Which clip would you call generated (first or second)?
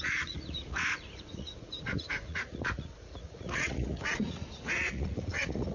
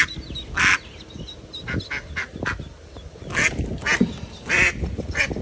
first